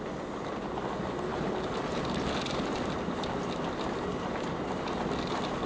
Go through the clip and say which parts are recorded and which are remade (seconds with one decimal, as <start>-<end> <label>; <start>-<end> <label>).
0.0-5.7 recorded